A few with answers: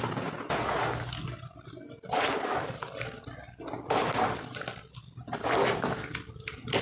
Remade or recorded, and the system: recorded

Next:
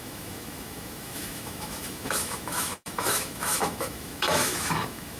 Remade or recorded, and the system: remade, autoencoder, DAC-VAE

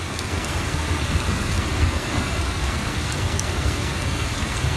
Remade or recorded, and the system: remade, codec, SNAC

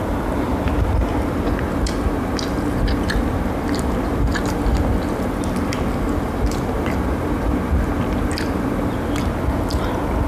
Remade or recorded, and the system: recorded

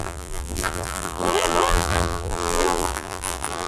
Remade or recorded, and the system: remade, vocoder, BigVGAN v2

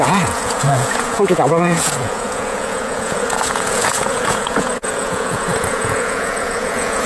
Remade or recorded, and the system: remade, vocoder, Vocos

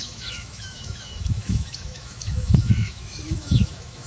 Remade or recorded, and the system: remade, autoencoder, DAC-VAE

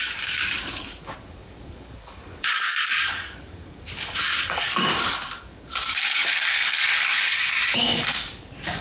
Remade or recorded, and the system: remade, codec, DAC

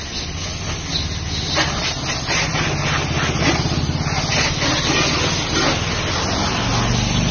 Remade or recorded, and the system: recorded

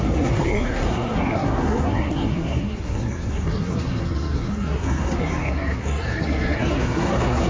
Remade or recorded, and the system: remade, codec, SNAC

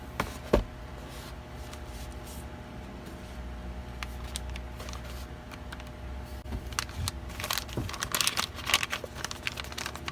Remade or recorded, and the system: recorded